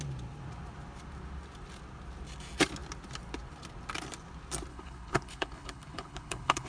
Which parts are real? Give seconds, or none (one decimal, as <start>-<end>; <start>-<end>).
0.0-4.7